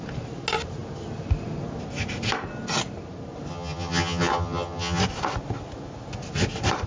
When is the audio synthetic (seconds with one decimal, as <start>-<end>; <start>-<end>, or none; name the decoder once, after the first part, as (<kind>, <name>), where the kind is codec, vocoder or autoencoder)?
3.5-5.0 (vocoder, HiFi-GAN)

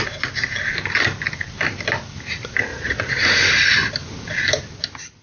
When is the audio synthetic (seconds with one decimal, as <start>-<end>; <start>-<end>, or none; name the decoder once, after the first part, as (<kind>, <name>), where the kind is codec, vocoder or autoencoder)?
2.7-3.2 (vocoder, Vocos)